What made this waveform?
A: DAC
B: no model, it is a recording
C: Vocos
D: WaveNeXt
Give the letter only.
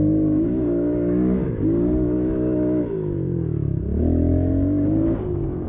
A